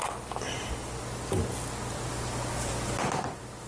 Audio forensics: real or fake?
real